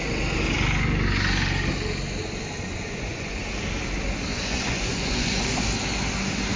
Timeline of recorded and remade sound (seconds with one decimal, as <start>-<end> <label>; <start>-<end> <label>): 0.0-2.7 recorded; 2.7-3.4 remade; 3.4-4.3 recorded; 4.3-5.4 remade; 5.4-6.6 recorded